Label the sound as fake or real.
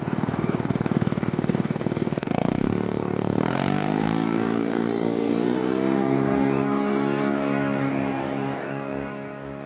fake